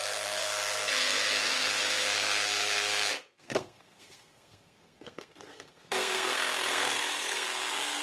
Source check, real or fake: fake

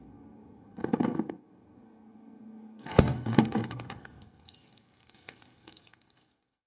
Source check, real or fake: fake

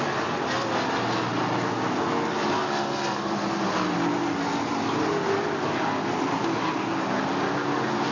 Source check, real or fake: real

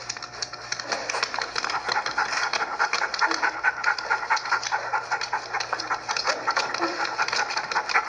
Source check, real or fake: real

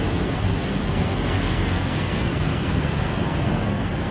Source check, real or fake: fake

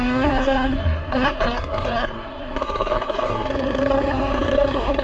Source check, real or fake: fake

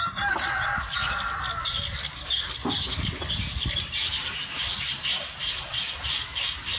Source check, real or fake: real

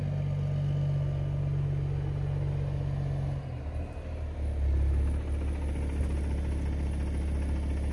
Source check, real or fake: real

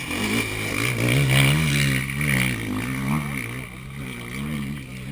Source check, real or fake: real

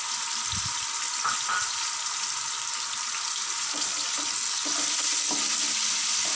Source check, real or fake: real